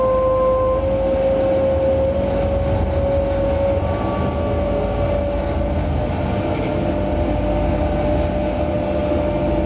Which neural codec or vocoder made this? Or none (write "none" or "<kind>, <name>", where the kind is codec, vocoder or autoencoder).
none